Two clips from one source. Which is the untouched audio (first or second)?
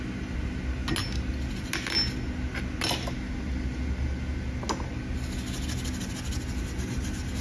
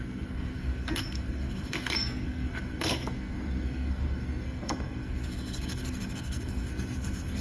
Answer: first